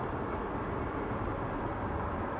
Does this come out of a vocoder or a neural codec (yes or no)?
yes